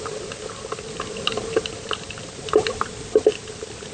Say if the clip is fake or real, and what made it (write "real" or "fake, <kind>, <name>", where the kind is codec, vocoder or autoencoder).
real